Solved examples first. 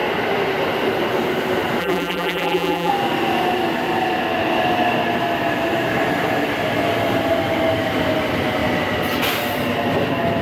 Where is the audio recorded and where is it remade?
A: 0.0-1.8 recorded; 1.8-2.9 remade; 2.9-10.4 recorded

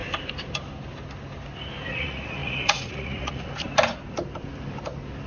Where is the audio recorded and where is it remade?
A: 0.0-1.9 recorded; 1.9-3.7 remade; 3.7-5.3 recorded

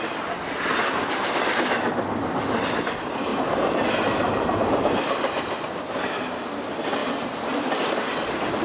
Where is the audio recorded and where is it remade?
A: 0.0-7.0 recorded; 7.0-7.9 remade; 7.9-8.6 recorded

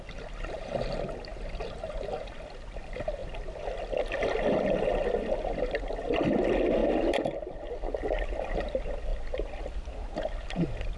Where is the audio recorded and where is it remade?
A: 0.0-11.0 recorded

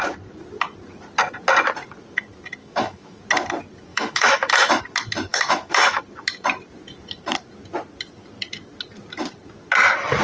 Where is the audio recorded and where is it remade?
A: 0.0-2.6 recorded; 2.6-3.2 remade; 3.2-3.9 recorded; 3.9-4.8 remade; 4.8-5.3 recorded; 5.3-6.0 remade; 6.0-10.2 recorded

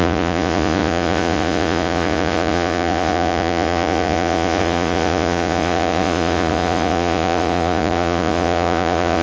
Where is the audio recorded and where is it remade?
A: 0.0-9.2 remade

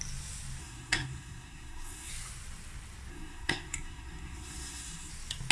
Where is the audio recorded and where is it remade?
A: 0.0-0.6 recorded; 0.6-2.1 remade; 2.1-3.1 recorded; 3.1-5.1 remade; 5.1-5.5 recorded

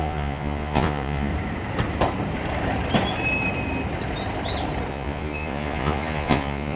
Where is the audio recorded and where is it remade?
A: 0.0-1.3 remade; 1.3-4.9 recorded; 4.9-6.8 remade